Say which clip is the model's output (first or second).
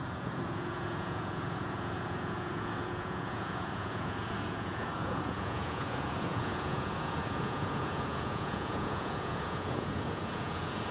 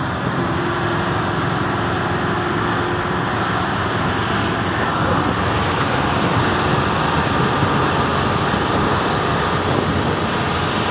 first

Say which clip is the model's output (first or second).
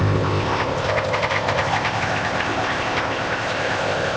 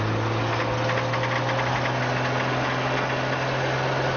first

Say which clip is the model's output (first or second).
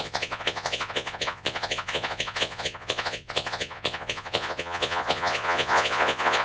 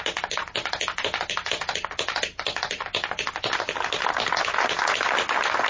first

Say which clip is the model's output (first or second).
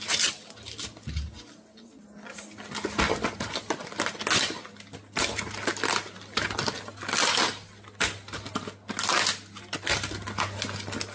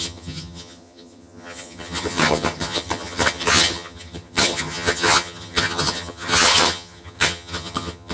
second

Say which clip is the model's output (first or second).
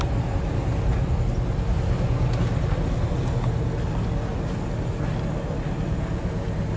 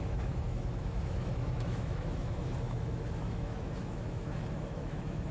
second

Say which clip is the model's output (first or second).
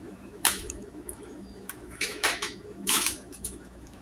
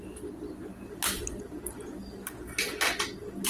first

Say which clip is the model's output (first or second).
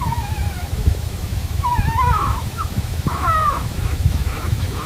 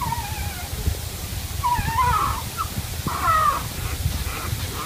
first